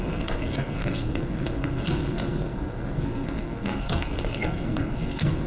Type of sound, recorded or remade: remade